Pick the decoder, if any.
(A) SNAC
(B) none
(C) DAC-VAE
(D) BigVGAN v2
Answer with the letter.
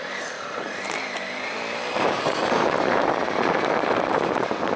D